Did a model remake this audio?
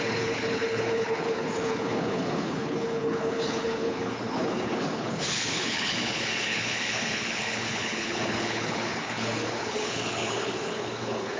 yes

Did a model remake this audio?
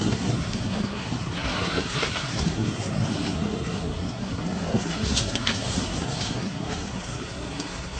yes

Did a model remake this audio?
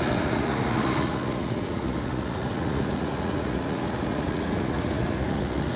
yes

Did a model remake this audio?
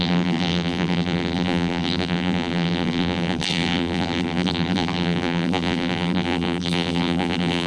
yes